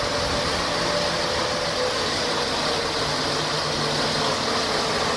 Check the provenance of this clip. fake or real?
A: real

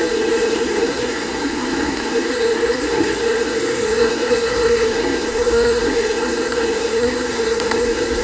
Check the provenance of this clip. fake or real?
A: fake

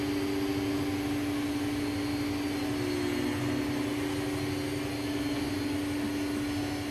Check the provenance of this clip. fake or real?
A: real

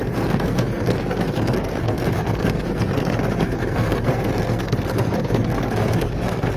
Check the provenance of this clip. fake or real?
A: fake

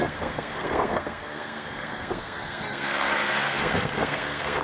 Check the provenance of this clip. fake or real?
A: fake